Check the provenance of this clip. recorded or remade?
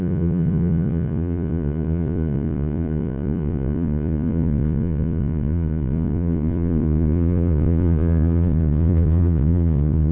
remade